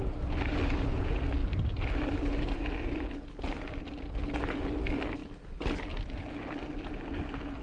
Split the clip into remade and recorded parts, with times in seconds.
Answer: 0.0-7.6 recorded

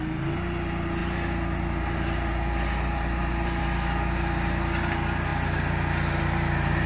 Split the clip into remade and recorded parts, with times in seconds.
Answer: 0.0-1.0 recorded; 1.0-3.6 remade; 3.6-6.9 recorded

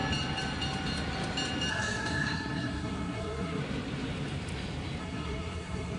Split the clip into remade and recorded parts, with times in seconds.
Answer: 0.0-1.7 recorded; 1.7-3.6 remade; 3.6-5.0 recorded; 5.0-6.0 remade

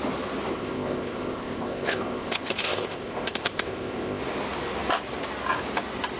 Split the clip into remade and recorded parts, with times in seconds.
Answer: 0.0-0.5 recorded; 0.5-4.2 remade; 4.2-6.2 recorded